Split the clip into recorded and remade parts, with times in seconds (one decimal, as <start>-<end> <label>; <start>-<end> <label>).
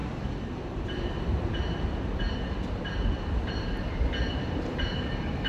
0.0-5.5 remade